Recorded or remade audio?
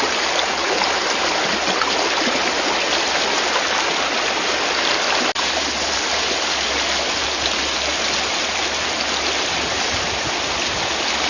recorded